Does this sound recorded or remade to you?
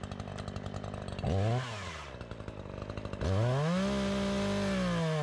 recorded